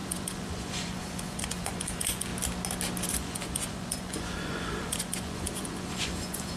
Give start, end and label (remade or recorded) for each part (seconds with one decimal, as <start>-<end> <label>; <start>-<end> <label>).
0.0-2.3 remade; 2.3-3.1 recorded; 3.1-6.6 remade